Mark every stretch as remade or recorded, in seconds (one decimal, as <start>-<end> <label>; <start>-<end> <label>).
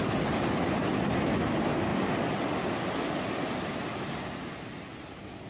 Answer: 0.0-5.5 recorded